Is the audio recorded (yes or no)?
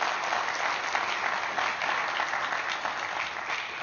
yes